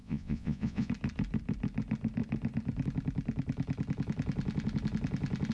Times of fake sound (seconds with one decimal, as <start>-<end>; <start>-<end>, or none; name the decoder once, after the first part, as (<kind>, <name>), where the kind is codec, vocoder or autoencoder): 0.0-0.9 (vocoder, Vocos)